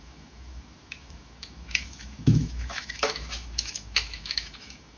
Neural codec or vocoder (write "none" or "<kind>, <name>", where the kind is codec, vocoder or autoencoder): autoencoder, DAC-VAE